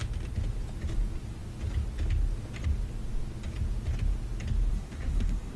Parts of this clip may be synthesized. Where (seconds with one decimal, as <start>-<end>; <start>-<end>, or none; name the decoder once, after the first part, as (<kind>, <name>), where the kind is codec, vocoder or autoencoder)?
4.7-5.6 (codec, SNAC)